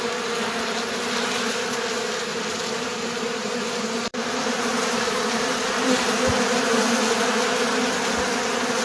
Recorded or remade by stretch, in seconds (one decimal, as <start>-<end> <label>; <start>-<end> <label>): 0.0-2.3 recorded; 2.3-6.9 remade; 6.9-8.8 recorded

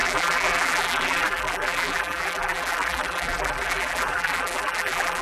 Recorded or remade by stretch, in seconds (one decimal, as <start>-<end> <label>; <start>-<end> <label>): 0.0-5.2 remade

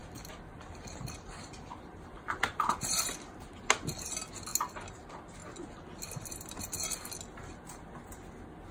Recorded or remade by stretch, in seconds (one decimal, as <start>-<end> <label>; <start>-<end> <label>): 0.0-3.0 remade; 3.0-8.7 recorded

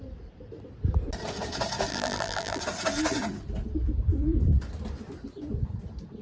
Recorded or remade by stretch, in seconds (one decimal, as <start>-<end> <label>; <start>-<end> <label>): 0.0-1.9 recorded; 1.9-2.6 remade; 2.6-6.2 recorded

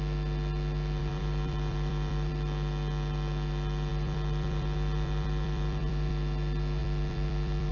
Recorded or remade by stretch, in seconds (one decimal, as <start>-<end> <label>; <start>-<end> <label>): 0.0-1.0 recorded; 1.0-2.3 remade; 2.3-3.9 recorded; 3.9-6.1 remade; 6.1-6.8 recorded; 6.8-7.7 remade